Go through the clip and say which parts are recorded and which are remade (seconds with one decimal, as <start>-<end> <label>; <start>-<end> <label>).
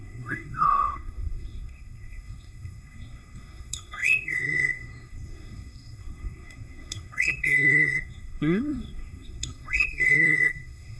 0.0-11.0 remade